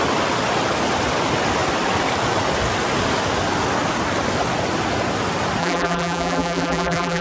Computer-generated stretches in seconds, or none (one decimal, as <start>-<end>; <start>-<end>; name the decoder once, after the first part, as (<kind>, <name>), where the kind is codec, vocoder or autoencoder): 5.6-7.2 (vocoder, BigVGAN v2)